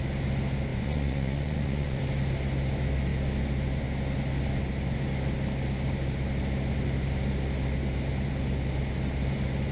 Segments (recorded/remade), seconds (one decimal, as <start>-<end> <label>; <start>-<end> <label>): 0.0-0.7 recorded; 0.7-2.0 remade; 2.0-9.7 recorded